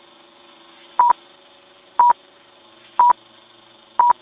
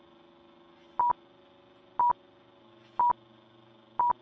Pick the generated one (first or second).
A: first